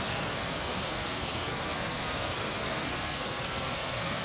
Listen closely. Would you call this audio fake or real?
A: fake